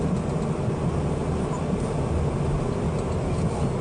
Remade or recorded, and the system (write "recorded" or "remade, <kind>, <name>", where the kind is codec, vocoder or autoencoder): recorded